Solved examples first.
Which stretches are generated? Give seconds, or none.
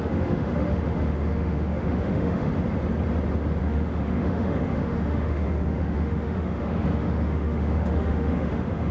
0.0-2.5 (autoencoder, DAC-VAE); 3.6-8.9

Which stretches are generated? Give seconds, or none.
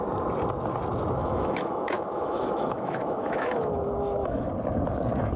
1.2-4.4 (autoencoder, DAC-VAE)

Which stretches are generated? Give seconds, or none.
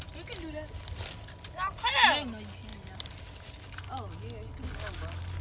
none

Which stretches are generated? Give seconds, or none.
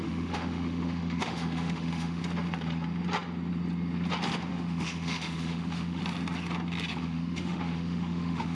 0.0-2.2 (autoencoder, DAC-VAE); 4.5-6.0; 7.0-8.5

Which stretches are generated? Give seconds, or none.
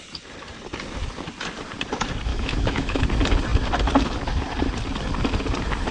2.3-3.0 (autoencoder, DAC-VAE)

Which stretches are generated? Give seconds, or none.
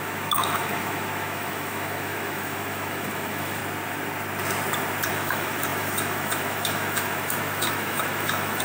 0.0-3.6 (autoencoder, DAC-VAE); 5.1-8.6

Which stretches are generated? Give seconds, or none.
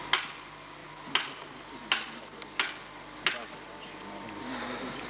none